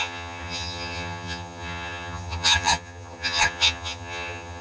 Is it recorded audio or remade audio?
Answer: remade